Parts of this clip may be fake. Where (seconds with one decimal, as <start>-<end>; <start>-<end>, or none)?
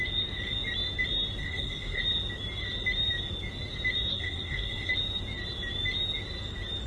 1.4-2.0; 4.1-4.9